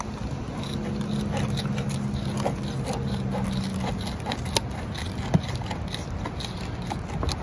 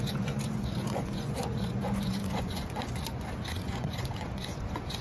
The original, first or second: first